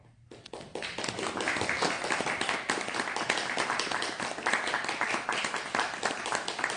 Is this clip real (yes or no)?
yes